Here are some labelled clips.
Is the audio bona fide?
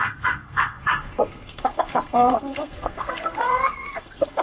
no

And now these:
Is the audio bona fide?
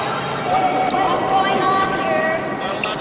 yes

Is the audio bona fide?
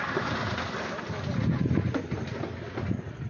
yes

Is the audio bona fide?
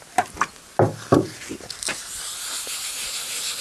yes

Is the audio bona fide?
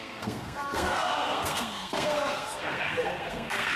no